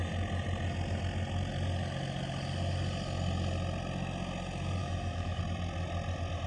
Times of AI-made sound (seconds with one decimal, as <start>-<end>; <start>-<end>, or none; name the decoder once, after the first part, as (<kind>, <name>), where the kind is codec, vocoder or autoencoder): 4.8-5.4 (autoencoder, DAC-VAE)